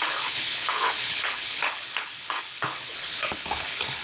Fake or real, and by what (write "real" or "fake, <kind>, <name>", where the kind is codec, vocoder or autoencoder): fake, codec, HILCodec